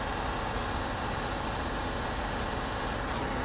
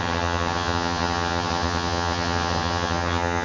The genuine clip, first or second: first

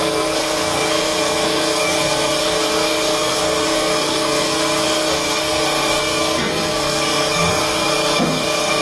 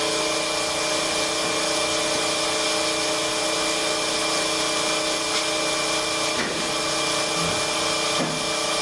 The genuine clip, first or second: second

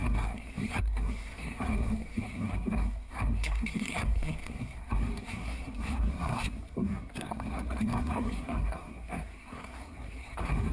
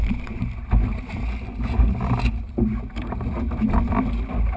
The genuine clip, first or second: second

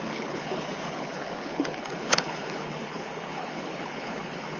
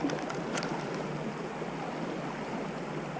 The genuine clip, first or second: second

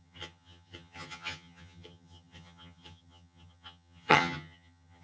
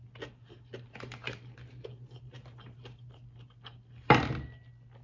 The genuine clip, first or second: second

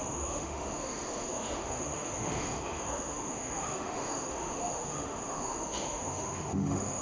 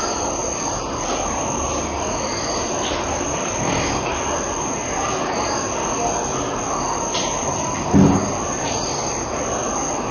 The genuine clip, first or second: second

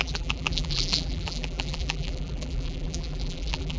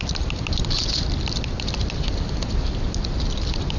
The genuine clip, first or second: second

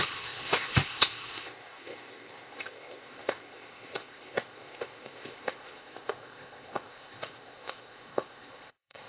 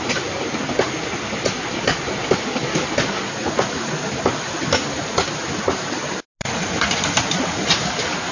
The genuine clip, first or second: second